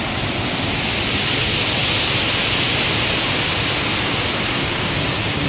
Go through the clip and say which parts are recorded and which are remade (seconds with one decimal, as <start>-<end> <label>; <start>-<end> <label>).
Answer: 0.0-5.5 recorded